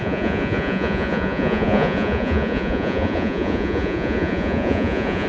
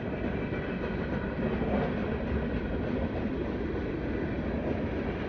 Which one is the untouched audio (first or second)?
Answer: second